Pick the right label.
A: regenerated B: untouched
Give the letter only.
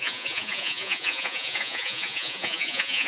A